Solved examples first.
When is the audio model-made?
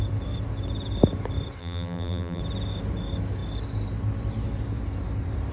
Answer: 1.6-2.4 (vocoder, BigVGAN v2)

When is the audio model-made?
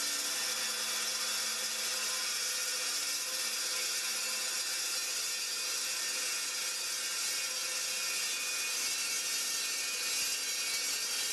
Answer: none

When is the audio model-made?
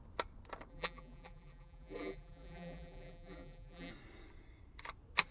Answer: 0.7-3.9 (vocoder, BigVGAN v2)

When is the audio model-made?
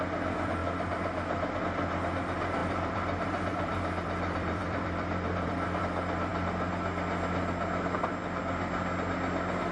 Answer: 2.6-5.8 (vocoder, BigVGAN v2)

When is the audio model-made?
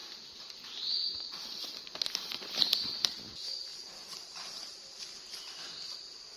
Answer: 0.0-2.6 (vocoder, BigVGAN v2); 3.7-5.8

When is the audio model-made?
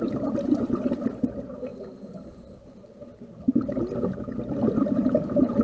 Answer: none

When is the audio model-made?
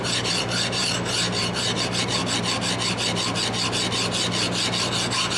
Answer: 0.0-2.2 (vocoder, BigVGAN v2); 4.9-5.4